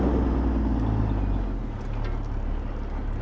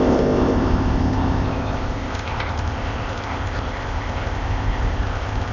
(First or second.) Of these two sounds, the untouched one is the first